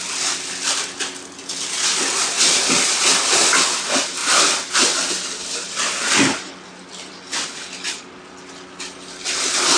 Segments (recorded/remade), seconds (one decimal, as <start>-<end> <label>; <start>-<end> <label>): 0.0-4.2 recorded; 4.2-7.1 remade; 7.1-9.8 recorded